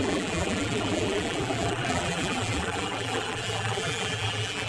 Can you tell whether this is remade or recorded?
remade